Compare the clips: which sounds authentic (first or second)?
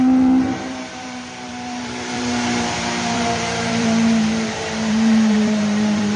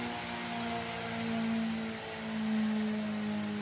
second